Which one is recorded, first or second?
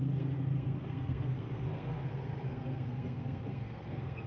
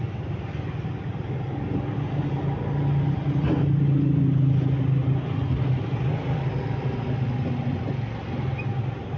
second